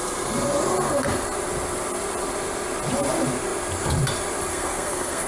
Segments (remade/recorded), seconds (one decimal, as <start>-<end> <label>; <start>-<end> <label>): 0.0-4.5 recorded; 4.5-5.3 remade